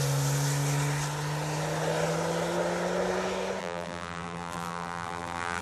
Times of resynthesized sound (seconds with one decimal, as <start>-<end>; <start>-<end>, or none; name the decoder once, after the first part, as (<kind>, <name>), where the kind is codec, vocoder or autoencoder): 3.6-5.6 (vocoder, BigVGAN v2)